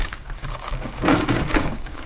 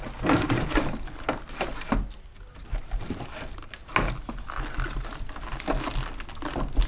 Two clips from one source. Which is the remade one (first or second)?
first